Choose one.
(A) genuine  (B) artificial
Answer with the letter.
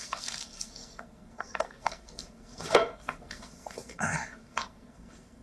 B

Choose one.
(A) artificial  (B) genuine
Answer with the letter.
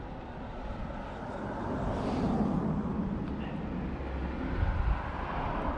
B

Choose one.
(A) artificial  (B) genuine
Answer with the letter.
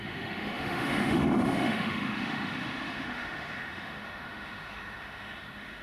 A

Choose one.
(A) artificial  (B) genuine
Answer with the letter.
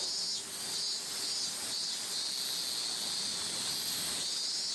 B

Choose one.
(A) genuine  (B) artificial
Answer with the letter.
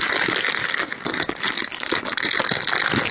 A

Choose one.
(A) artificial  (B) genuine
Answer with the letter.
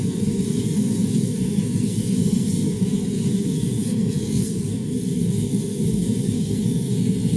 A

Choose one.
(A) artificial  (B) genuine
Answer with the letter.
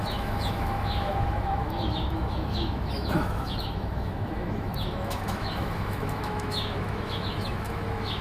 A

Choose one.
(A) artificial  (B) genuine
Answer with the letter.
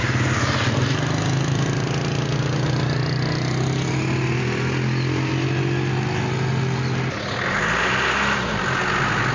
B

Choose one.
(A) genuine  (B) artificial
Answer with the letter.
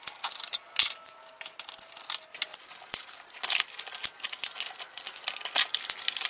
A